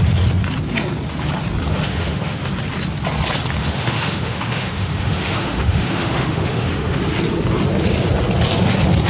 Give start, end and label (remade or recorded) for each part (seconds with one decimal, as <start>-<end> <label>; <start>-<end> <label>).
0.0-1.7 recorded; 1.7-2.5 remade; 2.5-3.6 recorded; 3.6-7.0 remade; 7.0-9.1 recorded